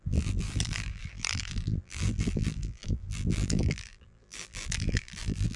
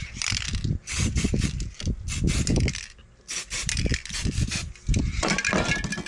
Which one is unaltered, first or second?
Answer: second